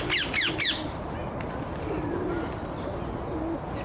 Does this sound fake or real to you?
real